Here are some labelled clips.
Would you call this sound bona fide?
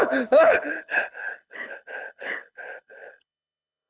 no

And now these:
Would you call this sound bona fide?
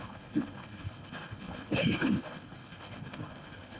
no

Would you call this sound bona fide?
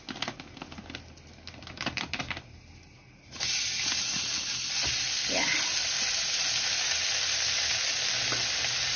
yes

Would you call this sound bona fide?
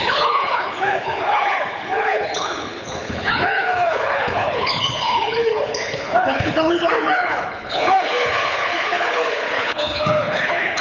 no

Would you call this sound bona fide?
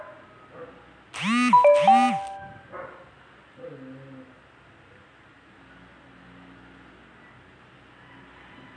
yes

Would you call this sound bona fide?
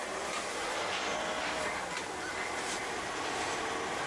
yes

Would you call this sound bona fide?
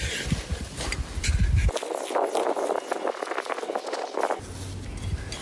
yes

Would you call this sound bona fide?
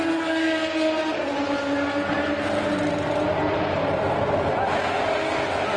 yes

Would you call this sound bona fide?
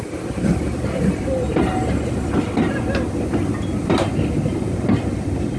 yes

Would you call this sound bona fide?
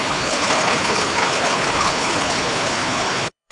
no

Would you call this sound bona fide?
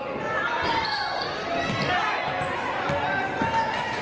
yes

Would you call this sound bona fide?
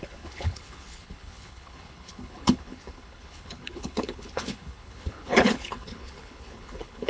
no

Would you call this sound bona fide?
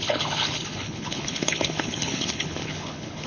no